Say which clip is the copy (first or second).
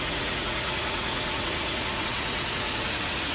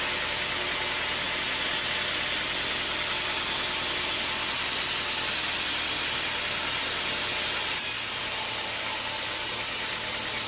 first